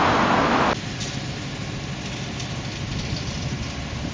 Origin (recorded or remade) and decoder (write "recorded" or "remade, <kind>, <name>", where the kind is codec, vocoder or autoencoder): recorded